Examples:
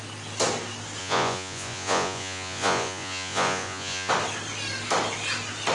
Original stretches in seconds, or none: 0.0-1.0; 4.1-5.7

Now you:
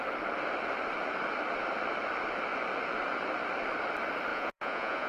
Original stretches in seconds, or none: 0.0-4.3